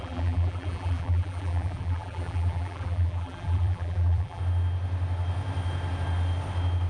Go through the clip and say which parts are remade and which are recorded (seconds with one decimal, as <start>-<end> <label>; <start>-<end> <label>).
0.0-4.4 remade; 4.4-6.9 recorded